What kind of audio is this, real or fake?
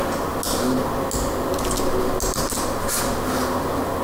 real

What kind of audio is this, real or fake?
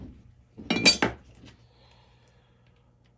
real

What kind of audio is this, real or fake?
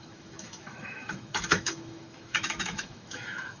fake